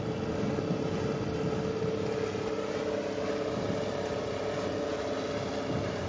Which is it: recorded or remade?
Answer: recorded